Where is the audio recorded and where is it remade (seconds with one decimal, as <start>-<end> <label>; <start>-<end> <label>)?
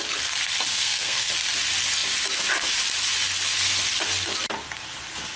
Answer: 0.0-0.7 recorded; 0.7-1.3 remade; 1.3-5.4 recorded